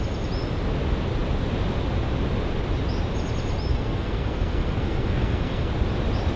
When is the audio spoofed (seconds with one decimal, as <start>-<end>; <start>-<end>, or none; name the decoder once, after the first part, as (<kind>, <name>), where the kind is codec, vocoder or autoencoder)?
3.7-5.7 (codec, SNAC)